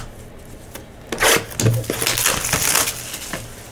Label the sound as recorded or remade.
recorded